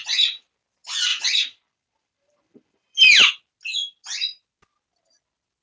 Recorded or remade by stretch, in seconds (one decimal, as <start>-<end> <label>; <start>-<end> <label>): 0.0-1.1 recorded; 1.1-3.3 remade; 3.3-5.6 recorded